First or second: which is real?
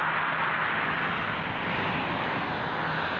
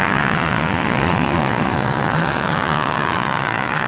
first